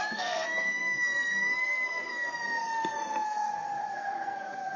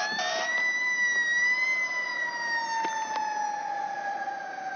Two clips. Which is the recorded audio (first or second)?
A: second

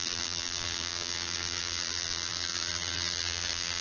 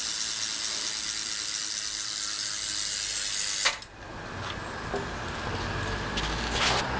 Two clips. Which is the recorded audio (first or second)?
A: second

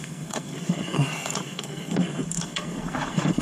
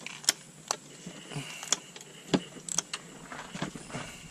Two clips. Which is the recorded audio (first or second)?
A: second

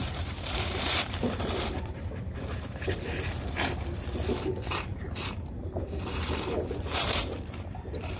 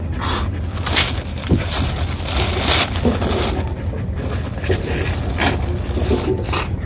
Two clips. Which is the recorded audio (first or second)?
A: second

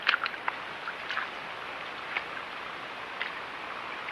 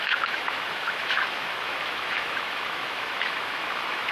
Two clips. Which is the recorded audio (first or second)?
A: first